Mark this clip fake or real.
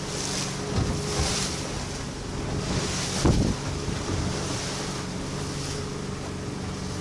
real